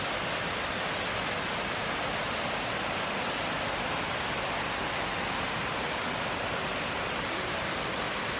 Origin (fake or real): real